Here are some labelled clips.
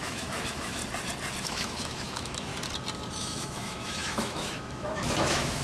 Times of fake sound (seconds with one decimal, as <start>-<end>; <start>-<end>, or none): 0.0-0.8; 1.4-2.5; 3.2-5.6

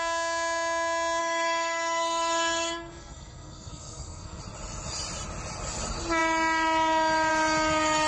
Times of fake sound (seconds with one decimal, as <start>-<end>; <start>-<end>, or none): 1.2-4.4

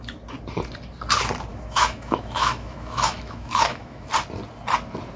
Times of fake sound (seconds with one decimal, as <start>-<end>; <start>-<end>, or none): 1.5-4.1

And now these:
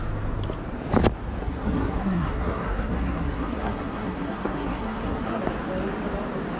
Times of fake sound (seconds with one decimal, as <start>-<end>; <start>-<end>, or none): 1.4-5.4

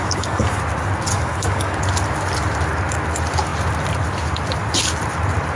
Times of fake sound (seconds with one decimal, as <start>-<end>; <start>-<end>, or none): 0.0-0.6; 1.1-1.8

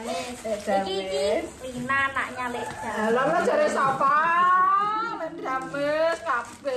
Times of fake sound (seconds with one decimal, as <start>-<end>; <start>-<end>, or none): 2.6-4.1